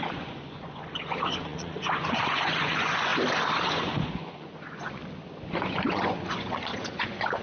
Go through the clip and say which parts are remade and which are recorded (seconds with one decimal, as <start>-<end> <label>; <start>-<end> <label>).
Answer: 0.0-3.1 remade; 3.1-3.7 recorded; 3.7-5.0 remade; 5.0-5.6 recorded; 5.6-7.4 remade